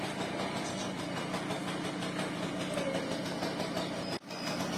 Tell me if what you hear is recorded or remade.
recorded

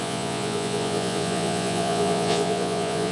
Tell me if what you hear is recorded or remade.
remade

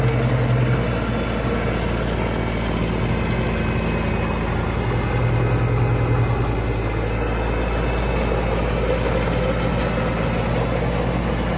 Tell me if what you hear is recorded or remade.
recorded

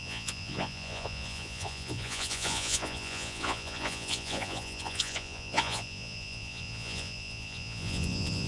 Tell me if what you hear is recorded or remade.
remade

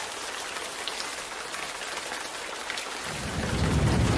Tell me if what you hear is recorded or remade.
recorded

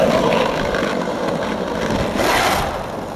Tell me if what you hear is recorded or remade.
recorded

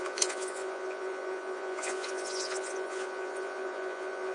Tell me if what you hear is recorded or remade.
remade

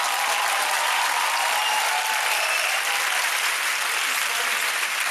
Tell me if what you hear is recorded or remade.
recorded